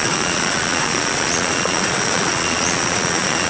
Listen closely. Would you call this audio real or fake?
fake